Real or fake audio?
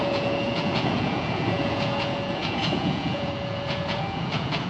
fake